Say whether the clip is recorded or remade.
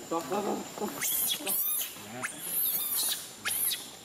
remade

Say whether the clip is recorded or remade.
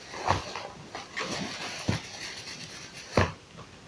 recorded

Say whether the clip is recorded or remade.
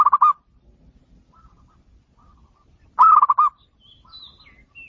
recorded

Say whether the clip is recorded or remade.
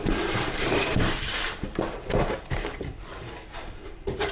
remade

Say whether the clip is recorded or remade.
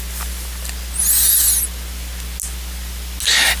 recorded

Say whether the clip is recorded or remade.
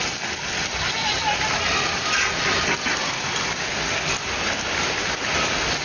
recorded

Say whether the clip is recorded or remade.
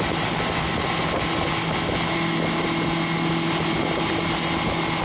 recorded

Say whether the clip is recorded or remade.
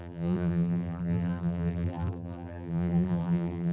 remade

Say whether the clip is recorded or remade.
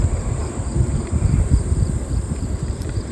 remade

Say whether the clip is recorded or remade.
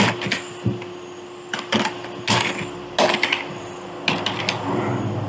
recorded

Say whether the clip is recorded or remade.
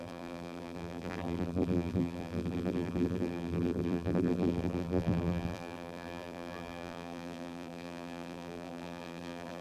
remade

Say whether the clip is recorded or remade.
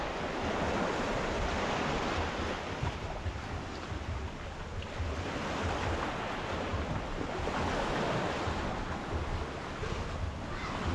recorded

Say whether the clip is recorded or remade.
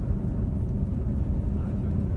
remade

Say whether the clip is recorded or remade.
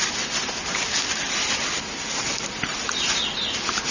recorded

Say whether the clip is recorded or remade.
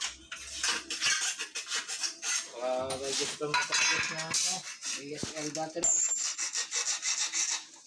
recorded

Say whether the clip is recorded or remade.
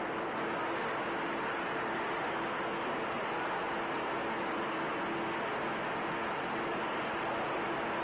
recorded